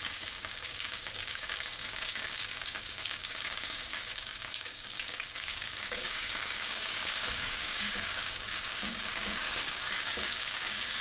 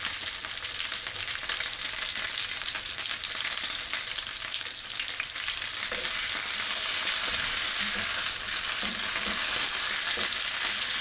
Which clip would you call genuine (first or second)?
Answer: second